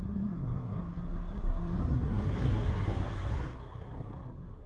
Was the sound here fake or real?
fake